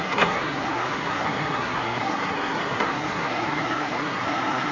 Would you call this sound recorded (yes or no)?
no